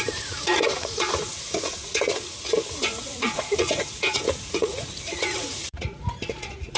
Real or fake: fake